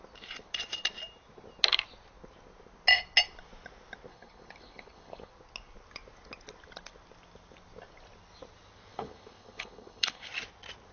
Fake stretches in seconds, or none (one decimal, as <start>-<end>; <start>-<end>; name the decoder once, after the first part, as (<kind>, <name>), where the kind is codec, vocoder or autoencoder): 4.1-5.3 (codec, HILCodec); 8.9-10.3